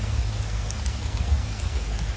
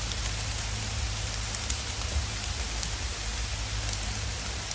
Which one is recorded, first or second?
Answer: second